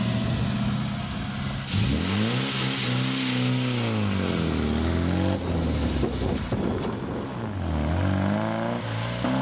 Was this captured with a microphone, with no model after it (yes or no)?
yes